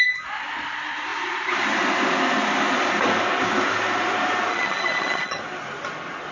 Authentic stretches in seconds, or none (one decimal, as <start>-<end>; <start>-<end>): 0.0-4.5; 5.4-6.3